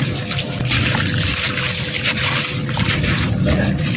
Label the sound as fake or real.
real